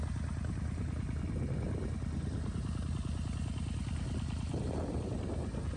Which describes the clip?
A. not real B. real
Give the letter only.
B